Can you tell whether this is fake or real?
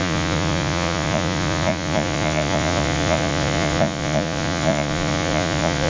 fake